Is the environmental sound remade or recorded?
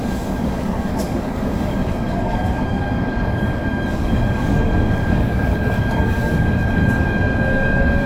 remade